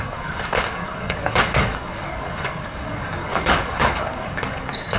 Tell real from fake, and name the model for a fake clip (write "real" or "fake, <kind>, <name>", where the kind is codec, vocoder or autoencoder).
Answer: fake, codec, DAC